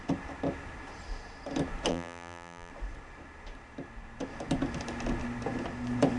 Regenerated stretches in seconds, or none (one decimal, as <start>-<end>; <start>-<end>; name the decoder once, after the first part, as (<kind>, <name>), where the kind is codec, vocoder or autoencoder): 1.9-2.7 (vocoder, BigVGAN v2)